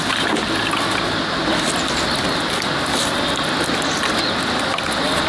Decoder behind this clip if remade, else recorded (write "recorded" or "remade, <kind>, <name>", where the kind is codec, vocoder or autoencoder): recorded